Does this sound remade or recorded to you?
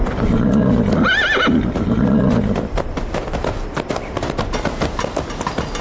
recorded